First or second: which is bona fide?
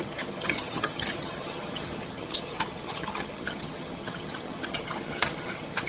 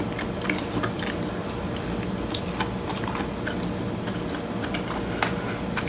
second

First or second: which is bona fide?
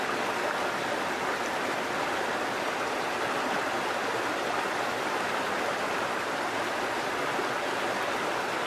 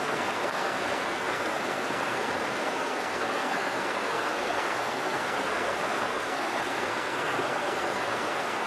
first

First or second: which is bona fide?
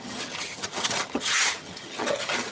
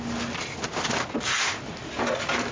second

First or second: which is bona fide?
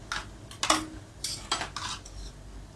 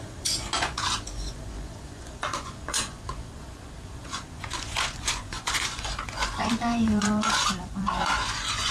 first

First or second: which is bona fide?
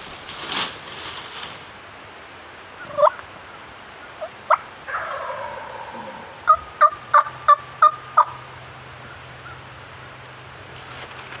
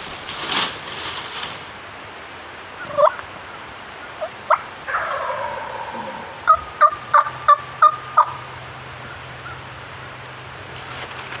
first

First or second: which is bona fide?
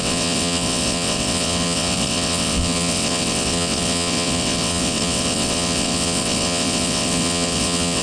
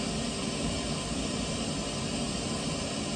second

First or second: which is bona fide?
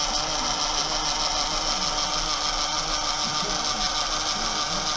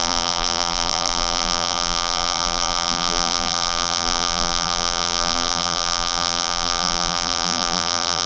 first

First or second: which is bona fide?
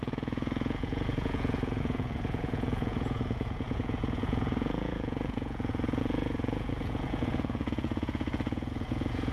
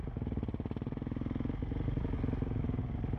second